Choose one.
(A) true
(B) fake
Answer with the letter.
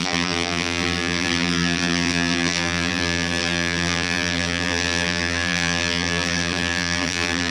B